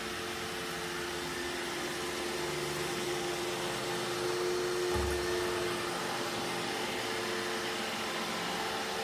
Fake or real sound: real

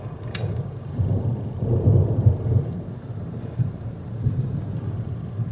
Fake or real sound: fake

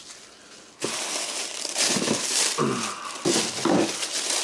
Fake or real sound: real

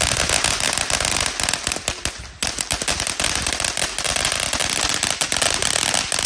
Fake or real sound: real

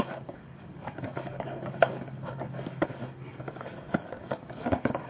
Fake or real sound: fake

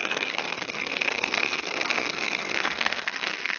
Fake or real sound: fake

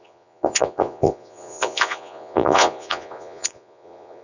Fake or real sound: fake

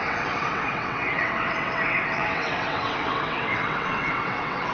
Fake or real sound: fake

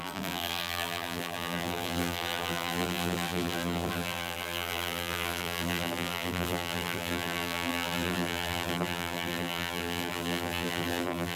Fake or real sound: fake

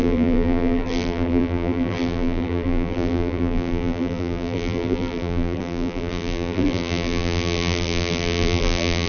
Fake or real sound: fake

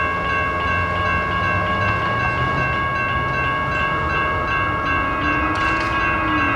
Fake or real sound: real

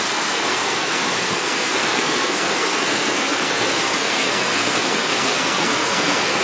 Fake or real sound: fake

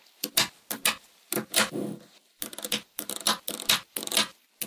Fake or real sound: real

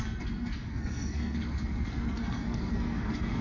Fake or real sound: fake